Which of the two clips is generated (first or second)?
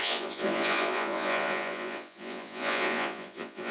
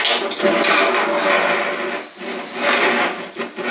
first